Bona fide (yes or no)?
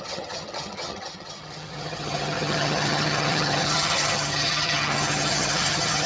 no